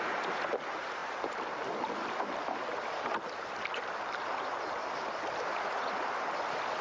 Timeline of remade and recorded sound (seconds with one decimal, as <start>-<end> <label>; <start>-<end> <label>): 0.0-5.5 recorded; 5.5-6.0 remade; 6.0-6.8 recorded